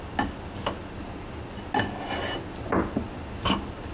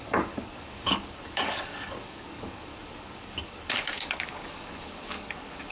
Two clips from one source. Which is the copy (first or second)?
second